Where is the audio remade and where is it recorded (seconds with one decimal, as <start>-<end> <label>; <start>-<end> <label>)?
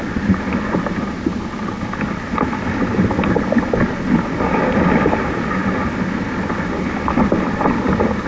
0.0-8.3 recorded